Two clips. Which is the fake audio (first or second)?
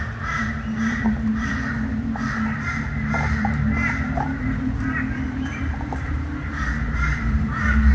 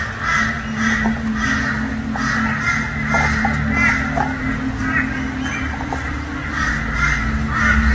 first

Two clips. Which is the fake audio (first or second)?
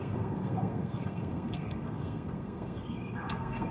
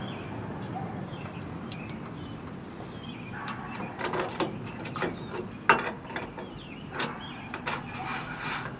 first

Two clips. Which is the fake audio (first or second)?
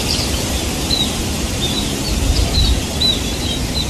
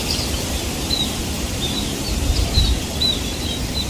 second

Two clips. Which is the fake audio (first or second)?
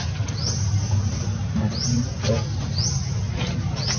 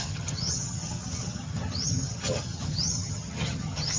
second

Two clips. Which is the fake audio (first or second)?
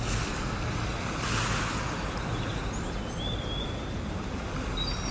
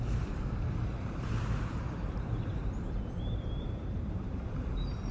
second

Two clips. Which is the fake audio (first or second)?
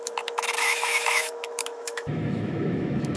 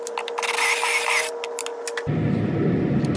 first